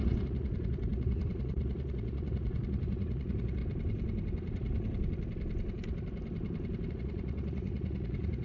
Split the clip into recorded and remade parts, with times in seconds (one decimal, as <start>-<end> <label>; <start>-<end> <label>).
0.0-3.6 remade; 3.6-6.9 recorded; 6.9-8.4 remade